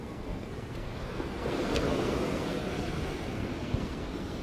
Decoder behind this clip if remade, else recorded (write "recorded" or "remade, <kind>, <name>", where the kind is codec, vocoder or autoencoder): remade, codec, SNAC